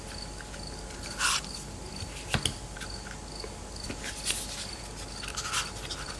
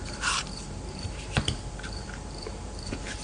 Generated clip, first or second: second